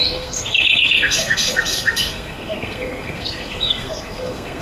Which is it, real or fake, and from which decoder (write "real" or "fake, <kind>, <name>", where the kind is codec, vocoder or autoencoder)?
fake, codec, SNAC